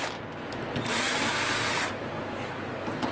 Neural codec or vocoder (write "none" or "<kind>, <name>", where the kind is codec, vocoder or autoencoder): none